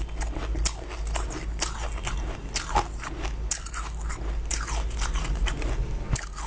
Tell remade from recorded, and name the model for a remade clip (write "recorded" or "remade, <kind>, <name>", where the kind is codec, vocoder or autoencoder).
recorded